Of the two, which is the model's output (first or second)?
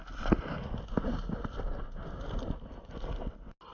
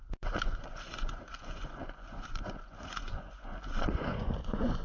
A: second